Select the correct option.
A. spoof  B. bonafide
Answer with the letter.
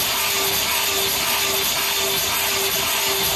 B